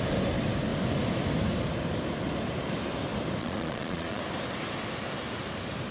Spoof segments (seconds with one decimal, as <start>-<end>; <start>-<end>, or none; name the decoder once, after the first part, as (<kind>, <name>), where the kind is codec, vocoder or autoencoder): 3.4-4.2 (vocoder, Vocos)